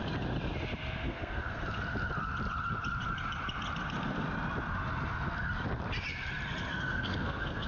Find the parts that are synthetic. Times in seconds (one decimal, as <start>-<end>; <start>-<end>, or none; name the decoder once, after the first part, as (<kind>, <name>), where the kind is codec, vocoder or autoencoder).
1.0-1.6 (codec, SNAC); 6.7-7.7